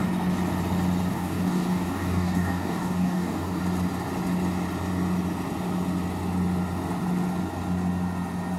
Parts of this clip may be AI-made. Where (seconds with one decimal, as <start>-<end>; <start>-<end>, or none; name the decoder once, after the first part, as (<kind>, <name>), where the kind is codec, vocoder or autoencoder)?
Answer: 1.1-3.6 (codec, DAC)